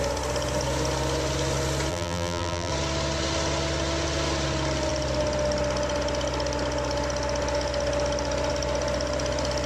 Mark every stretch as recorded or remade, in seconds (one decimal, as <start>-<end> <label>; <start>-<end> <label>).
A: 0.0-1.9 recorded; 1.9-2.7 remade; 2.7-9.7 recorded